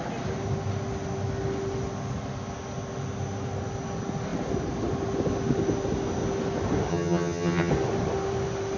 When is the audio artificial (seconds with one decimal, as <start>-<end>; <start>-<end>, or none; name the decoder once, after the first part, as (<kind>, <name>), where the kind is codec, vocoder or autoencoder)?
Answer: 6.9-7.7 (vocoder, HiFi-GAN)